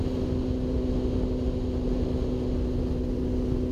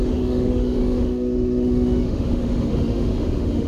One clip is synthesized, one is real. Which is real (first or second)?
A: first